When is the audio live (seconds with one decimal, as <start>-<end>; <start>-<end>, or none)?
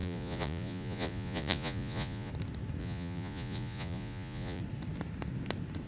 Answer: 2.3-2.8; 4.6-5.9